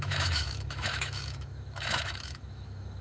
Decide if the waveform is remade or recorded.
remade